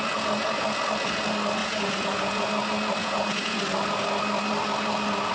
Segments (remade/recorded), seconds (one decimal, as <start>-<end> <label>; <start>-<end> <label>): 0.0-1.6 recorded; 1.6-2.5 remade; 2.5-3.0 recorded; 3.0-3.6 remade; 3.6-5.3 recorded